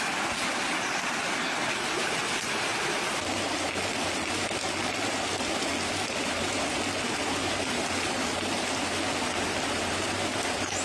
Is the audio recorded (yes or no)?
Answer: yes